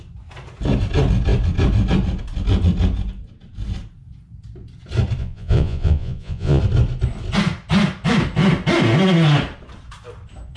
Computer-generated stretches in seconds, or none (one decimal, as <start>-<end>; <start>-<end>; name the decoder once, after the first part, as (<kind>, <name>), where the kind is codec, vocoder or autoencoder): 5.2-6.6 (vocoder, Vocos)